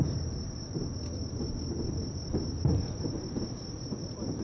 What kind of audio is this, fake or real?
real